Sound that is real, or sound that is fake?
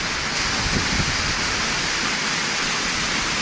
real